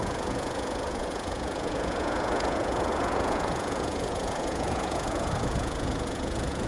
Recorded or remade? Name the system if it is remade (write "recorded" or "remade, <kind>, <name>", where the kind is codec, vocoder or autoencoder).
remade, vocoder, Vocos